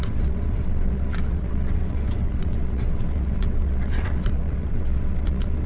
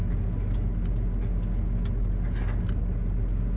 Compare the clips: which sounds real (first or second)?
second